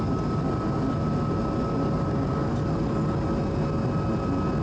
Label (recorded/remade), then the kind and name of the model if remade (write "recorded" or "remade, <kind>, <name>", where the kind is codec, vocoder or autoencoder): recorded